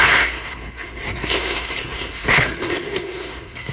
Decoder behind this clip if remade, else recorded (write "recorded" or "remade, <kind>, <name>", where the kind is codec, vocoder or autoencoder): remade, codec, SNAC